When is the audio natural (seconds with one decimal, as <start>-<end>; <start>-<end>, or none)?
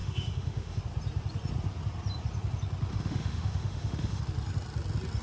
0.8-2.9; 4.2-5.2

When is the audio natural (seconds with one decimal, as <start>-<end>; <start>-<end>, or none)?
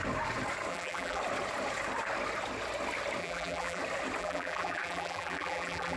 0.0-0.7; 1.2-3.2; 3.8-4.2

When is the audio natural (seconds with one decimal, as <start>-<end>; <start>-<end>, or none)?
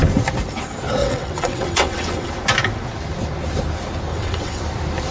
0.0-1.0; 2.3-4.1; 4.6-5.1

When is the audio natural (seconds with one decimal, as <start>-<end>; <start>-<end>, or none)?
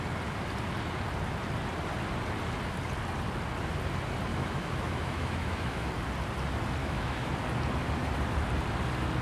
0.0-4.3; 5.9-6.8; 7.3-9.2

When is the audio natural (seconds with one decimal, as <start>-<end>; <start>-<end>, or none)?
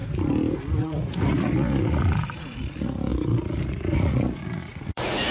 0.0-0.8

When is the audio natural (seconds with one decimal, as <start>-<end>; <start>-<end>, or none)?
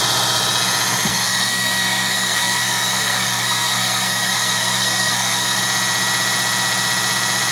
0.0-1.1; 5.6-7.5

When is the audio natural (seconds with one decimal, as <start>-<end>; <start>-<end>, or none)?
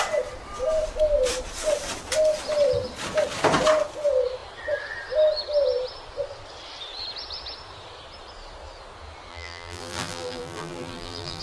0.0-9.3